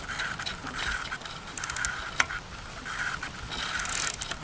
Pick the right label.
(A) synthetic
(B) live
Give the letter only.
B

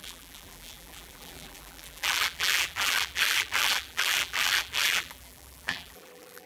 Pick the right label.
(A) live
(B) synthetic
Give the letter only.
B